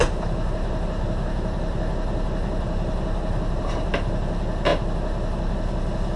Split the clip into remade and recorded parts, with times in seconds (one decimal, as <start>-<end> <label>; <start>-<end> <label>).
0.0-6.2 recorded